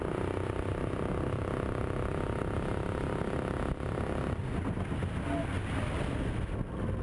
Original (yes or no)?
yes